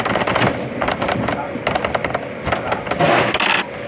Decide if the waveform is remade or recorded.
recorded